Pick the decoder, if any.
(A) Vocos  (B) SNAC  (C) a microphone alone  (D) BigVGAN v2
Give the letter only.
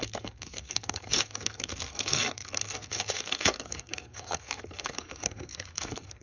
B